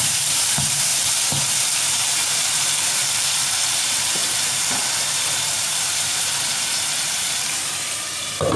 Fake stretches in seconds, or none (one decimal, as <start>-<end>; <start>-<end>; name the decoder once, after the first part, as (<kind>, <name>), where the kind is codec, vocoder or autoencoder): 0.0-0.9 (vocoder, BigVGAN v2); 1.5-8.6